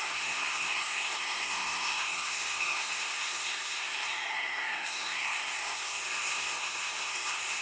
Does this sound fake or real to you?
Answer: fake